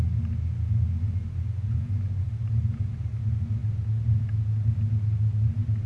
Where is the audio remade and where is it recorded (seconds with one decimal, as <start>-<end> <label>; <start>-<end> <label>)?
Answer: 0.0-5.9 recorded